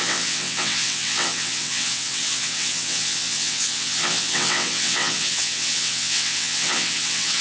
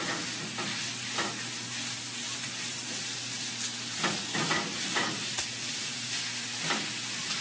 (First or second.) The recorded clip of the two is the second